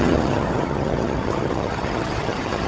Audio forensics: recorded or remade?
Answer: remade